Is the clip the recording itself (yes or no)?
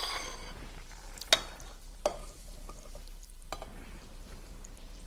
yes